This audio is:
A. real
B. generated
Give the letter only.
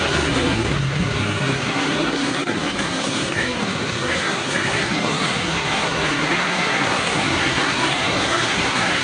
B